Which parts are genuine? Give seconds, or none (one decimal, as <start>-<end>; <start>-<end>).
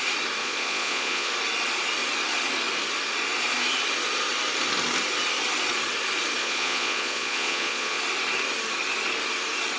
0.0-0.4; 1.3-6.4; 8.0-9.8